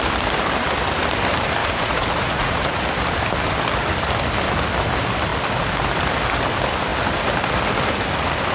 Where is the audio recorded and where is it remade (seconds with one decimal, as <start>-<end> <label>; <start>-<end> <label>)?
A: 0.0-1.6 recorded; 1.6-2.8 remade; 2.8-8.5 recorded